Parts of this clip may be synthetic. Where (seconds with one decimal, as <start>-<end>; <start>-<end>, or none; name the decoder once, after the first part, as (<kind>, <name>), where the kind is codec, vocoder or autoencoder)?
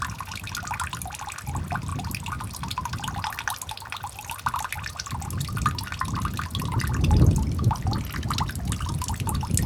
none